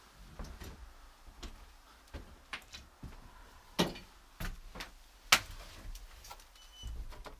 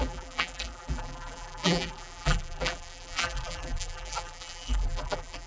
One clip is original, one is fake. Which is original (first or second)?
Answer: first